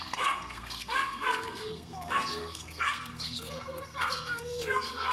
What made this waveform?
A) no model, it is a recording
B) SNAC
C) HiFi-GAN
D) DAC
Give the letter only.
B